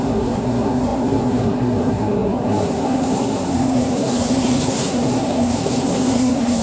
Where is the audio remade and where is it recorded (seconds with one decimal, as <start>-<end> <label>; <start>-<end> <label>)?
0.0-6.6 remade